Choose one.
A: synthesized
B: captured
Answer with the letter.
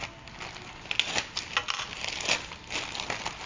B